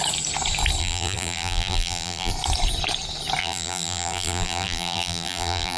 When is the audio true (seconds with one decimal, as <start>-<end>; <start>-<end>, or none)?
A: 0.0-0.8; 2.3-3.4